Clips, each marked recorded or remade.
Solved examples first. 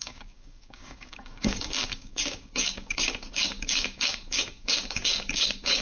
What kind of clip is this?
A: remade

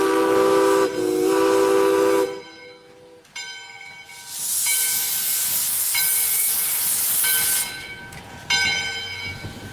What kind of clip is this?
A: recorded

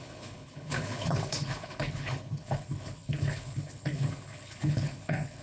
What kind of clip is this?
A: remade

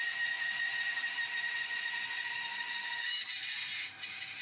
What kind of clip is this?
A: recorded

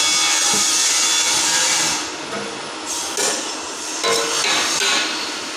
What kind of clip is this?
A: recorded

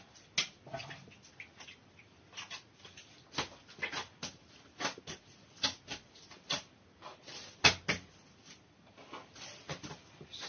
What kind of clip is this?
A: recorded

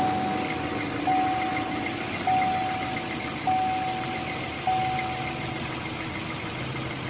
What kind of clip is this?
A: recorded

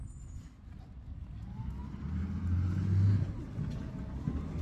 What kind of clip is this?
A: recorded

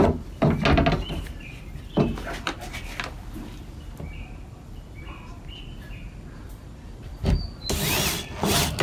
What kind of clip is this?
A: recorded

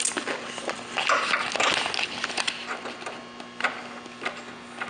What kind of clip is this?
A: recorded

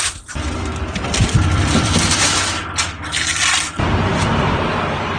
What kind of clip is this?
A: remade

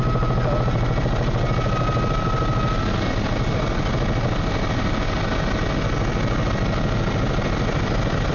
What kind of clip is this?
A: recorded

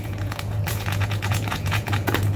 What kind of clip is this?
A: remade